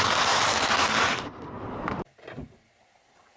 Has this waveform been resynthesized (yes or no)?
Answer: no